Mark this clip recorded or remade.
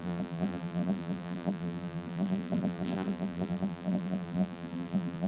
remade